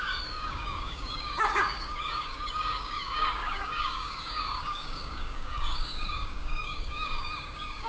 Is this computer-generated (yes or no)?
yes